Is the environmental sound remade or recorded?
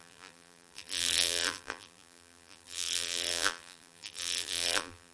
remade